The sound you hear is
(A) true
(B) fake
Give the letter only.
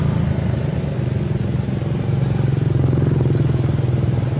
A